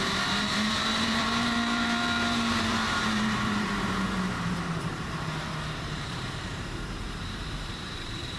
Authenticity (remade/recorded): remade